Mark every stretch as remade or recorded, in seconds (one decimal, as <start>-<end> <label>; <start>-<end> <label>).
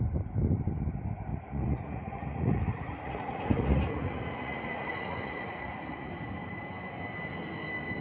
0.0-1.3 recorded; 1.3-6.1 remade; 6.1-8.0 recorded